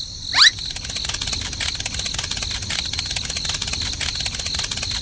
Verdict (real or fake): real